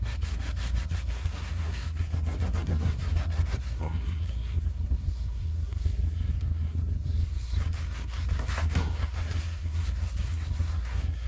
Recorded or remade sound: remade